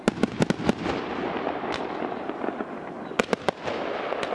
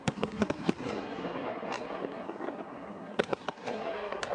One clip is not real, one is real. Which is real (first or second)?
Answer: first